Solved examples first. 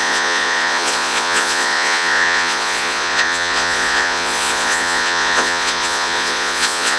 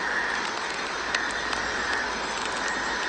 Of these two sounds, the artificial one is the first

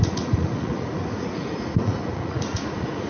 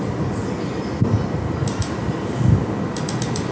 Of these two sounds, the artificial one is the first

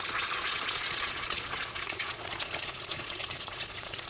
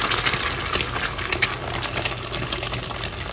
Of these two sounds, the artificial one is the first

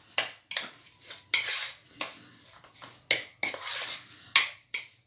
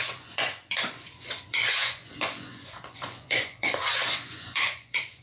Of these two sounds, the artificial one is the second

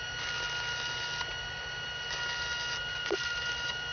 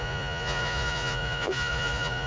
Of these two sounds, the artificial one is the second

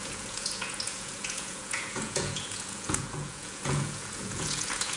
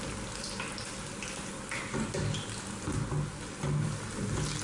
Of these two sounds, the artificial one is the first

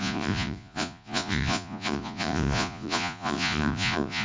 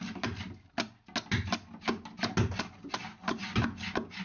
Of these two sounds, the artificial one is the first